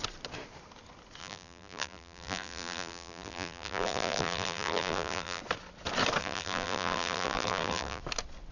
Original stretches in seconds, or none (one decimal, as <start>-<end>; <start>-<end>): 0.0-1.2; 5.4-6.2; 8.0-8.5